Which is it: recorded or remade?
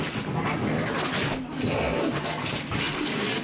recorded